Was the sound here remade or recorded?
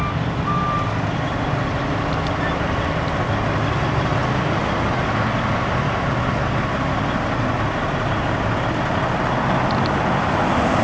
recorded